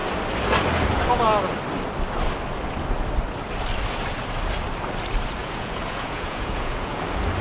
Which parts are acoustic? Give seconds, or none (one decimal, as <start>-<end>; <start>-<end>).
0.0-5.4; 7.0-7.4